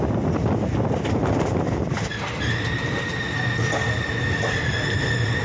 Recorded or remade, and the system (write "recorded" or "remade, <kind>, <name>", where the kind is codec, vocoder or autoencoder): recorded